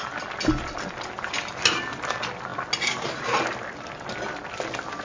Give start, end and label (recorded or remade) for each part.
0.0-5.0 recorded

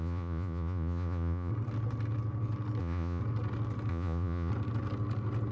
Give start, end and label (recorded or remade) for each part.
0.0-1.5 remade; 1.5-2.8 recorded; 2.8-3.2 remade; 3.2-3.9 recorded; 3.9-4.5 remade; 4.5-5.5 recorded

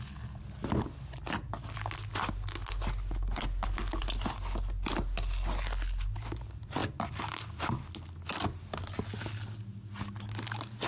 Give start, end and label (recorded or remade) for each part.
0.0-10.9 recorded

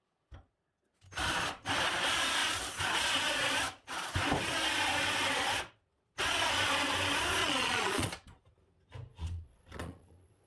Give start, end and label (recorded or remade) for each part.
0.0-7.4 recorded; 7.4-8.1 remade; 8.1-9.1 recorded; 9.1-10.5 remade

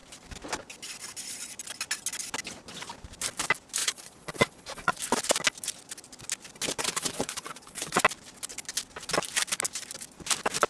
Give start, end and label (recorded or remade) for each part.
0.0-3.8 recorded; 3.8-5.0 remade; 5.0-6.8 recorded; 6.8-8.0 remade; 8.0-10.7 recorded

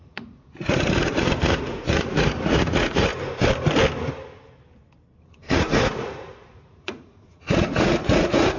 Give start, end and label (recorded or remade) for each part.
0.0-3.1 remade; 3.1-5.3 recorded; 5.3-8.6 remade

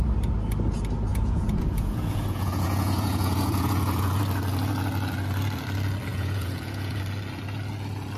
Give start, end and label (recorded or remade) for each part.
0.0-1.1 recorded; 1.1-4.2 remade; 4.2-6.1 recorded; 6.1-7.0 remade; 7.0-8.2 recorded